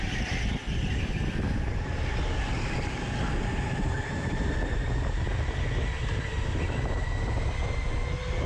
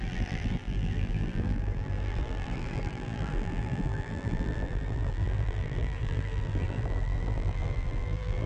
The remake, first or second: second